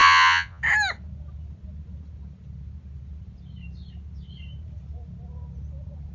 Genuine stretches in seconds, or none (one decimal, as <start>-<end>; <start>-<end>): 0.6-6.1